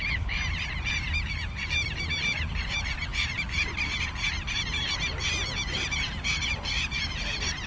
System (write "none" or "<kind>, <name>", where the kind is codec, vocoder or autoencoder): vocoder, BigVGAN v2